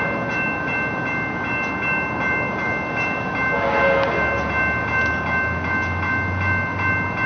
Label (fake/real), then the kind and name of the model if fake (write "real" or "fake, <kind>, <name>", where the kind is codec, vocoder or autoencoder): real